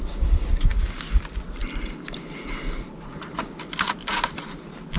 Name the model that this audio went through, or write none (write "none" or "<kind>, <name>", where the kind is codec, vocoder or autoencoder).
none